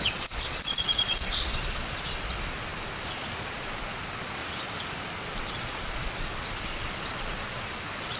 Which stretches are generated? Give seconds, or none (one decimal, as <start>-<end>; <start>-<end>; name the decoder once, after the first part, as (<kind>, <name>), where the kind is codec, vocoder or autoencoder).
0.0-4.4 (vocoder, Vocos); 5.4-8.2